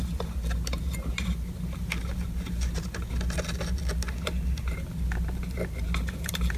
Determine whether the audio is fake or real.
real